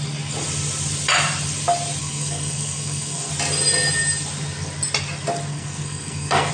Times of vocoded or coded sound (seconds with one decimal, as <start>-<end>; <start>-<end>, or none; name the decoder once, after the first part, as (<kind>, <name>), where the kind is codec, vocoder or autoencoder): 2.0-3.3 (codec, SNAC); 5.5-6.5